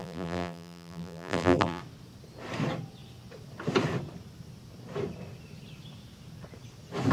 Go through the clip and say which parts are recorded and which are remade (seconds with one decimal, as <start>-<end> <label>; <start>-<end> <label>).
0.0-1.8 remade; 1.8-7.1 recorded